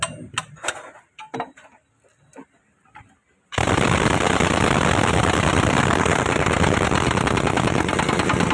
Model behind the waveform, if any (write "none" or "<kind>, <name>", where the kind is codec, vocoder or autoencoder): none